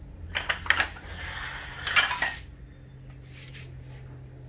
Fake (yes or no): no